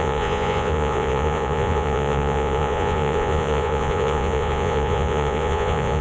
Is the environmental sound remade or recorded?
remade